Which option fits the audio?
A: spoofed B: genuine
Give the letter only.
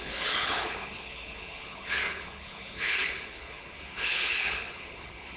A